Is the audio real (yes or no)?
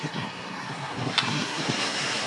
no